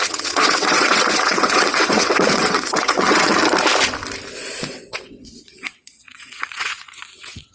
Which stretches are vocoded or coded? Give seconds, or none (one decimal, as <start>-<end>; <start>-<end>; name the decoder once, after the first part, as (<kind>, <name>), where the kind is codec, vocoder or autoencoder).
0.0-3.3 (vocoder, WaveNeXt); 4.7-7.5